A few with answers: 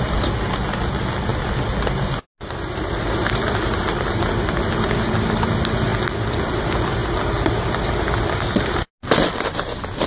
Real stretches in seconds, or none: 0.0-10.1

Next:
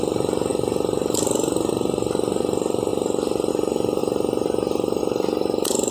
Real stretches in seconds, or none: 0.0-5.9

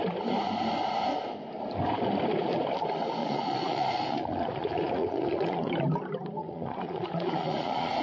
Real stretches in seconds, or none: 0.0-3.2; 5.7-6.4